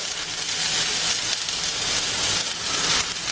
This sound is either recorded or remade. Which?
recorded